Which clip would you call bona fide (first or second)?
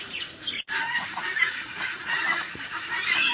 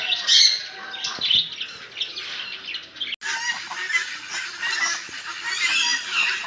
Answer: second